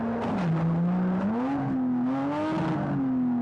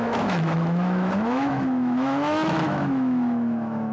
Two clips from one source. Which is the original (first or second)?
first